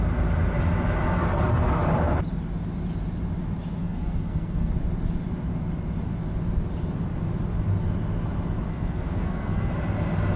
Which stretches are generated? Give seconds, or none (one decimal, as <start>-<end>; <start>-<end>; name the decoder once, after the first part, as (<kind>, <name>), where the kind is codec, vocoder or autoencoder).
3.8-4.7 (codec, SNAC); 8.7-9.7